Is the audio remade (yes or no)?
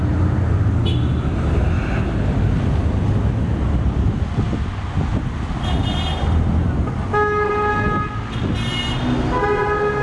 no